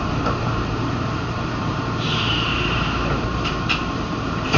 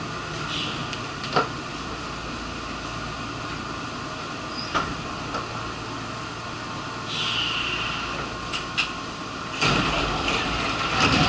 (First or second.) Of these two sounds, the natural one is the second